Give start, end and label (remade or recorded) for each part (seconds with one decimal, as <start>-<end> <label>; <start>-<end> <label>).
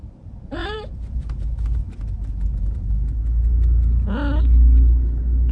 0.0-2.9 remade; 2.9-5.5 recorded